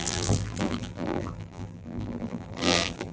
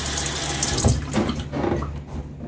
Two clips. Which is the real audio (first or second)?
second